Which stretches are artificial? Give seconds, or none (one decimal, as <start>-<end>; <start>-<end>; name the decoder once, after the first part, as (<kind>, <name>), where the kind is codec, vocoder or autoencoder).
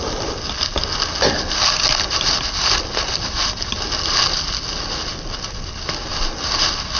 none